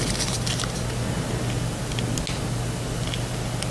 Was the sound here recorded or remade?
recorded